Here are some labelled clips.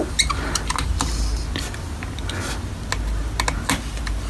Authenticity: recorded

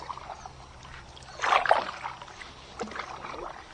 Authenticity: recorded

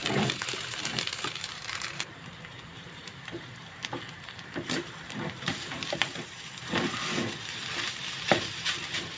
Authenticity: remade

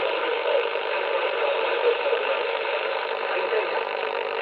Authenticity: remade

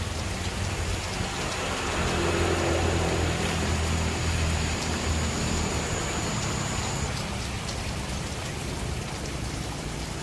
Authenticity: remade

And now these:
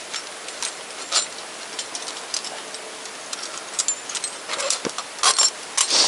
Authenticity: recorded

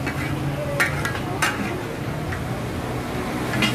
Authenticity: recorded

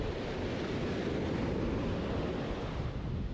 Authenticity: recorded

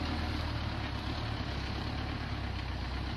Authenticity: recorded